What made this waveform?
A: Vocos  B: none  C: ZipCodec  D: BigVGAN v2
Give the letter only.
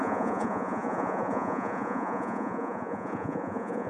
A